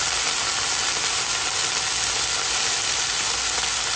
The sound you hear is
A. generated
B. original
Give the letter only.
B